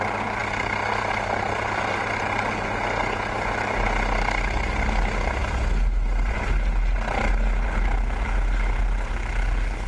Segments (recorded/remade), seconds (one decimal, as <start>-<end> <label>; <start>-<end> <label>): 0.0-9.9 recorded